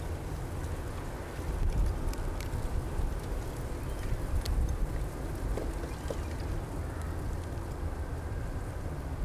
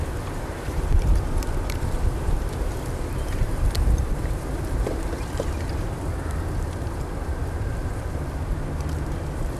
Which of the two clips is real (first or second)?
first